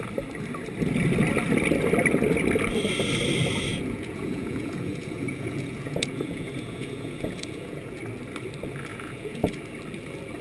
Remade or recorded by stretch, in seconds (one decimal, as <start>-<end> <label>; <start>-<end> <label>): 0.0-3.7 recorded; 3.7-8.0 remade; 8.0-8.9 recorded; 8.9-9.5 remade; 9.5-10.4 recorded